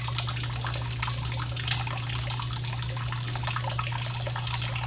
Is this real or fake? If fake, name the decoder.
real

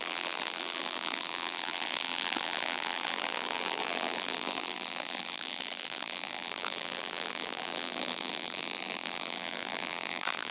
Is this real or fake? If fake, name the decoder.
fake, vocoder, BigVGAN v2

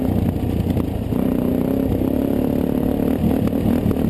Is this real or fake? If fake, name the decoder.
real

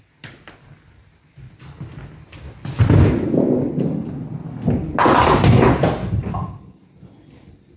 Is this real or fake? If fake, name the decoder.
real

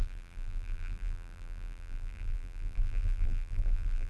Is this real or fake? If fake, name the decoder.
fake, vocoder, BigVGAN v2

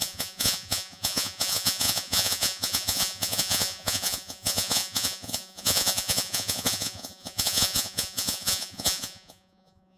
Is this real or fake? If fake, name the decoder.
fake, vocoder, Vocos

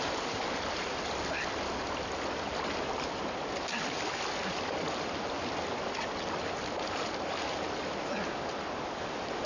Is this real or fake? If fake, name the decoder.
real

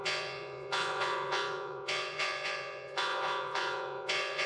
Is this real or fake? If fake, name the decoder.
fake, vocoder, Vocos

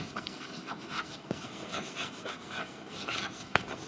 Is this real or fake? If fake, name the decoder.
fake, codec, SNAC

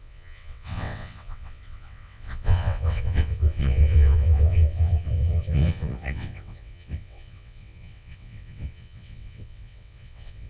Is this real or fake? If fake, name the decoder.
fake, vocoder, WaveNeXt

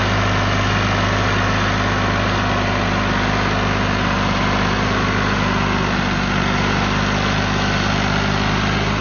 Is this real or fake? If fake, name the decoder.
real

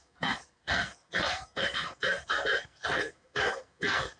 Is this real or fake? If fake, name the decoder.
fake, codec, SNAC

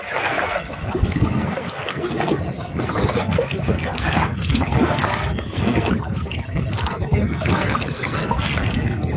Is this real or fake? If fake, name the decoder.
fake, codec, SNAC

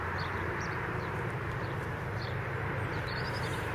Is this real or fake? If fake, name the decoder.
fake, vocoder, BigVGAN v2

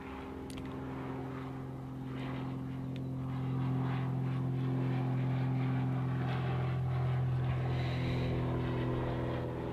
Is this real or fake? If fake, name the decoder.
real